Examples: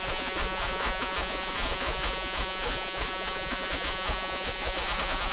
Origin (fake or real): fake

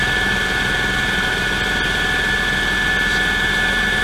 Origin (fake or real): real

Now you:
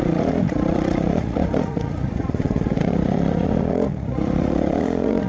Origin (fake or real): fake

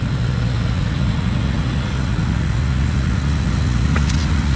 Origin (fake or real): fake